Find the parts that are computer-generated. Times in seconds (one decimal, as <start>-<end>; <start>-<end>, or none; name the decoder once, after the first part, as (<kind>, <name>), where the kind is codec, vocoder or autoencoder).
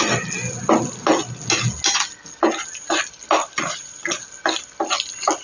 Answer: 3.4-4.2 (vocoder, Vocos)